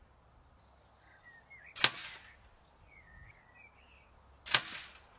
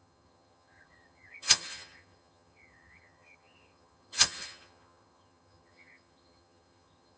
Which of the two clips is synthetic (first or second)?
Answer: second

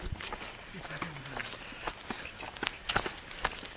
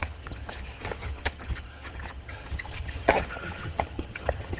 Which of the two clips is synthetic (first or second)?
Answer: second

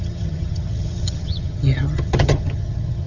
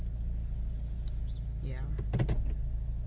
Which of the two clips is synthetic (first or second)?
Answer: first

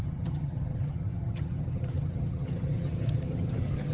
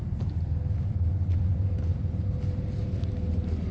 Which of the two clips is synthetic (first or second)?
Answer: first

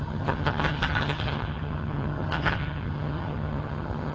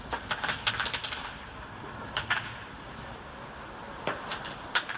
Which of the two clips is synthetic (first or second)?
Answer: first